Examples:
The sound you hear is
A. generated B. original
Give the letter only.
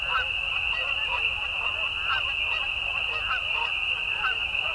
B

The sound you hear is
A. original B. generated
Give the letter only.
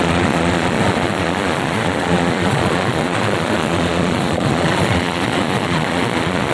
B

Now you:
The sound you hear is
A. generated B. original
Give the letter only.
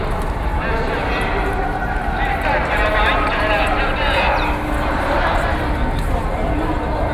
B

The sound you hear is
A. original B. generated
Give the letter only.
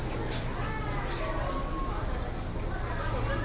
A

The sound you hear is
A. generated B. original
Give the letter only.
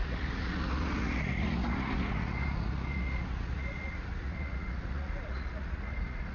A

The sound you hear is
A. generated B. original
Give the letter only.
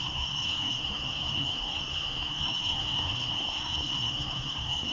A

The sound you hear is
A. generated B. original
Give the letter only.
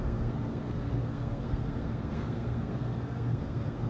A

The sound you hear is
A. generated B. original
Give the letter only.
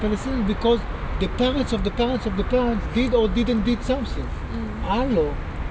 B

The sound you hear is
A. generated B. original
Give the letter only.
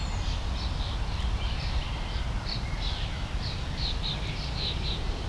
B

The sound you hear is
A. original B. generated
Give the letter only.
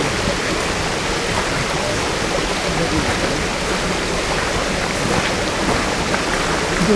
A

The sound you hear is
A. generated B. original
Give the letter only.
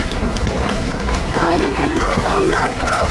A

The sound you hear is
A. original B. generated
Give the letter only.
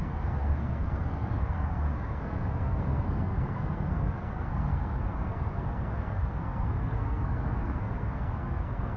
B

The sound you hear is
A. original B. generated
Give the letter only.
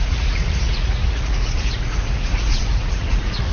B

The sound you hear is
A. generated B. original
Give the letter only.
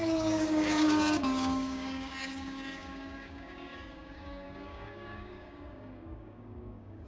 A